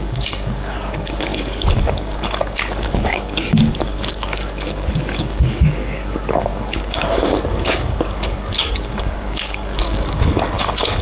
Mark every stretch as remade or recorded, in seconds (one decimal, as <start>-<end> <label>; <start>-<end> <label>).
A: 0.0-11.0 remade